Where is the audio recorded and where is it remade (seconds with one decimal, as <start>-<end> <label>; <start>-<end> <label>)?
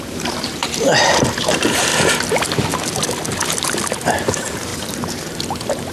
0.0-1.9 remade; 1.9-4.3 recorded; 4.3-4.7 remade; 4.7-5.9 recorded